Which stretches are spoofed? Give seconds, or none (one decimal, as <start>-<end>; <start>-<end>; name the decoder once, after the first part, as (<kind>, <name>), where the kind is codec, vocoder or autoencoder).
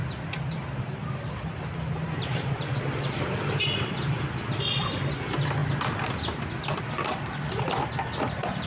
none